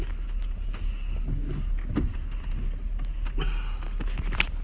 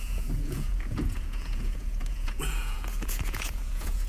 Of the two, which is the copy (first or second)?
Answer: second